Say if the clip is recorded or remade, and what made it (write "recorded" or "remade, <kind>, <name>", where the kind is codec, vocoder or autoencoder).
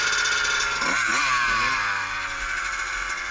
recorded